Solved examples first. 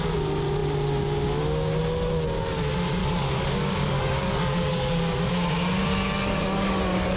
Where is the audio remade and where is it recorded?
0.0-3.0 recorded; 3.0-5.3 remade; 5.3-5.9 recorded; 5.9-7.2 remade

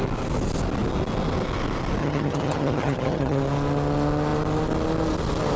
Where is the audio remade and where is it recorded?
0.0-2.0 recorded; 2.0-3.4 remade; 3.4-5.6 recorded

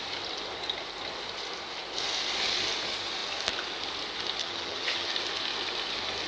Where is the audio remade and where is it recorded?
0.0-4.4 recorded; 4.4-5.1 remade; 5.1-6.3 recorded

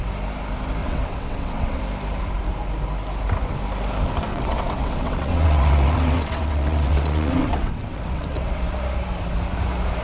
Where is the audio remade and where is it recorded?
0.0-0.8 recorded; 0.8-1.8 remade; 1.8-4.3 recorded; 4.3-8.6 remade; 8.6-10.0 recorded

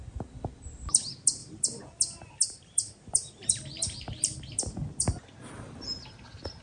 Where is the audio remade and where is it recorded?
0.0-1.4 recorded; 1.4-4.5 remade; 4.5-6.6 recorded